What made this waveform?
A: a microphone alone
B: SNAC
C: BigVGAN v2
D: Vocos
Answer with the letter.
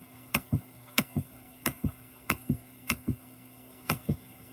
B